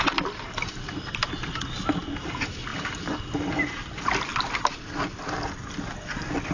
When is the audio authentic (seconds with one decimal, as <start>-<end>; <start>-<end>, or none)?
0.0-6.5